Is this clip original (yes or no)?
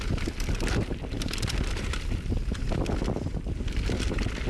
yes